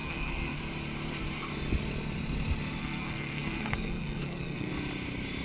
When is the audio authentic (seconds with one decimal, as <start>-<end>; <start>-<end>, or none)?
0.6-2.8; 4.7-5.4